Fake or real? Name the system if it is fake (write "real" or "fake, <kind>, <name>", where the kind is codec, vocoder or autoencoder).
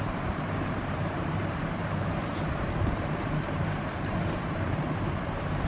fake, vocoder, BigVGAN v2